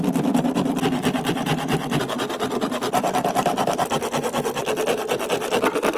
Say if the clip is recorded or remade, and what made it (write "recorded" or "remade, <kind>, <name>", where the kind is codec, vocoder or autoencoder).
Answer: recorded